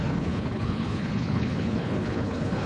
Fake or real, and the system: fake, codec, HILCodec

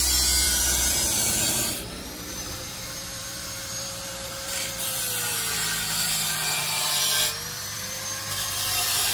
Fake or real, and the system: fake, vocoder, BigVGAN v2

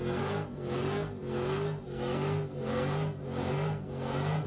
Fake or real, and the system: fake, codec, SNAC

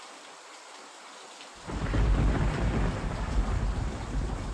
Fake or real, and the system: real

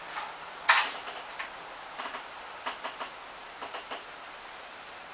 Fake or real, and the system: real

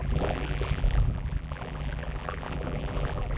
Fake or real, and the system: fake, vocoder, BigVGAN v2